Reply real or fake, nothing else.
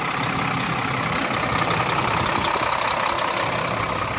real